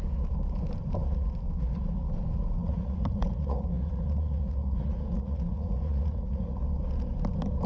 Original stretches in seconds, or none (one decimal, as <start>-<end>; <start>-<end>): 0.0-2.6; 6.6-7.7

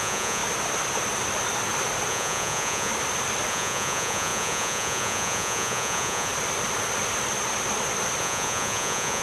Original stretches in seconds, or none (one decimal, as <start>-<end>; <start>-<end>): 0.4-2.1; 2.9-3.5; 6.3-8.2

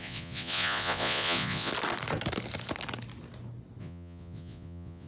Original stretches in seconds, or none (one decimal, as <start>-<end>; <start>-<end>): 1.7-3.8

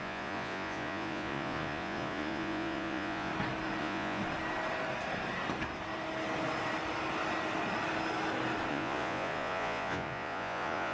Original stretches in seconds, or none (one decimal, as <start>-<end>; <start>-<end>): 3.3-3.8; 4.2-8.7

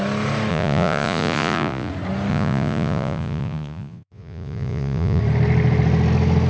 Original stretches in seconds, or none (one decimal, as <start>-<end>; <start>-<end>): 0.0-0.5; 1.9-2.3; 5.2-6.5

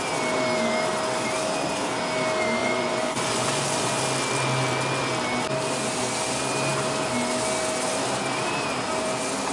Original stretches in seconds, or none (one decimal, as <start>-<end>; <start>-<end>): 0.0-2.6; 4.0-9.5

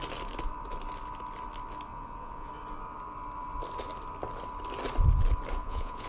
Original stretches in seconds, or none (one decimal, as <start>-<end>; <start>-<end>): 0.0-1.9; 2.5-5.6